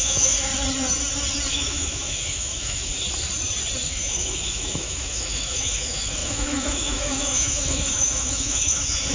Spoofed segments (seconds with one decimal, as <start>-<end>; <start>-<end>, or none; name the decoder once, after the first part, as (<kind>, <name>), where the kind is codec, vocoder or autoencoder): 0.0-0.5 (autoencoder, DAC-VAE); 1.5-2.9; 3.8-9.1